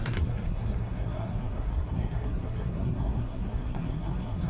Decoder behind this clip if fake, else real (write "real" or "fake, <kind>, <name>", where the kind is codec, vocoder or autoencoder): fake, codec, SNAC